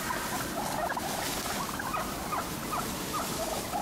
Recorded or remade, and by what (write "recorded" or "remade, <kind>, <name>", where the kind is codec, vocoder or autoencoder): recorded